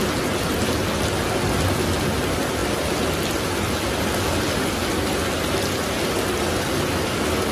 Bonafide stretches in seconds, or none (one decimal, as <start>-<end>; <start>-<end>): 0.0-7.5